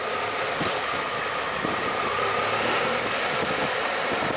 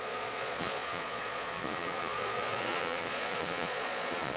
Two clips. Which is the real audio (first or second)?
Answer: first